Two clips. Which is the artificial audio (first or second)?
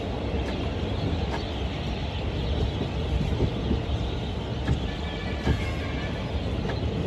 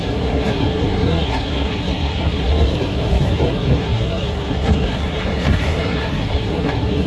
second